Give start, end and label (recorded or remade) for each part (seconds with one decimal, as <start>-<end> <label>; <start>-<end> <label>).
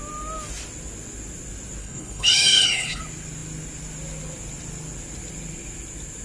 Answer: 0.0-1.8 recorded; 1.8-3.0 remade; 3.0-6.2 recorded